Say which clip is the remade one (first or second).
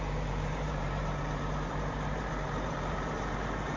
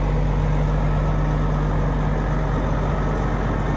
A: first